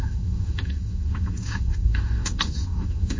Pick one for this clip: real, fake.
fake